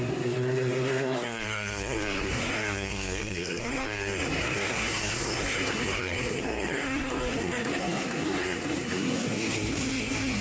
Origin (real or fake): fake